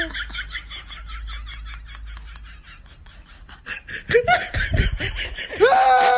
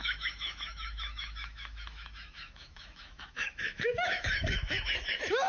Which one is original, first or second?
first